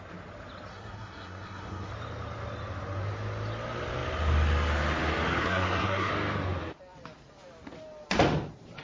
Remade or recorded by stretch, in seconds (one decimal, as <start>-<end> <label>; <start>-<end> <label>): 0.0-0.7 recorded; 0.7-1.9 remade; 1.9-5.4 recorded; 5.4-6.1 remade; 6.1-8.8 recorded